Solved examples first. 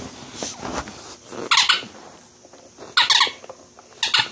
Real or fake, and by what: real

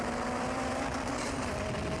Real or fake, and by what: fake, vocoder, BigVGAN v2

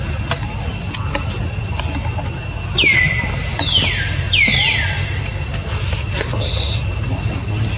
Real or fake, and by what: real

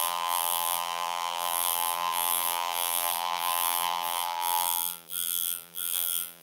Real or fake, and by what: fake, vocoder, BigVGAN v2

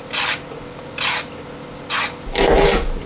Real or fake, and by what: real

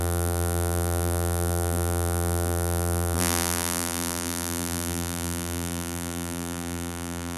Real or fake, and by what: fake, vocoder, BigVGAN v2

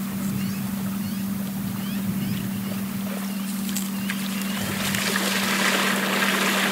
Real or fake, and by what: real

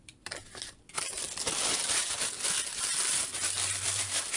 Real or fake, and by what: fake, vocoder, BigVGAN v2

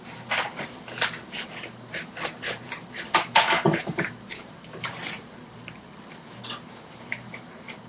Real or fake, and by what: fake, vocoder, BigVGAN v2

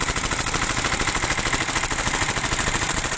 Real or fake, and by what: fake, vocoder, BigVGAN v2